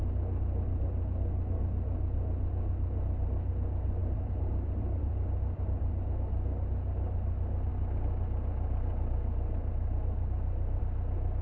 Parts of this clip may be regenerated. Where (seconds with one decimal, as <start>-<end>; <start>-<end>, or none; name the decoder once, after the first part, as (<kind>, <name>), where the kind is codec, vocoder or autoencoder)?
4.0-5.9 (vocoder, BigVGAN v2)